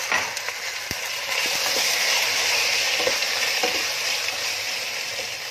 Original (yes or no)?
no